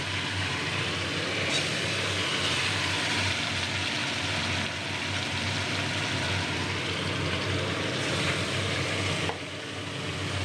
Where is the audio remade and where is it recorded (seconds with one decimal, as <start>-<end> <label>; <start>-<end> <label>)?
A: 0.0-10.4 recorded